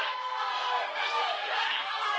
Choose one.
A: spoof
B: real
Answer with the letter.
A